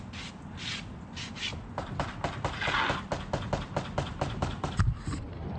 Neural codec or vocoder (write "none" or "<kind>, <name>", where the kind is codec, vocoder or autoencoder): none